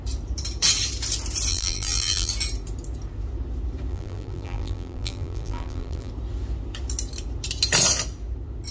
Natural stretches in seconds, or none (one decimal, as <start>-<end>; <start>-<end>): 0.0-1.5; 2.3-3.9; 6.1-8.7